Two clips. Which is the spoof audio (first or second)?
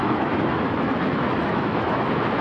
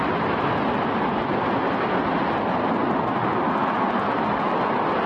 first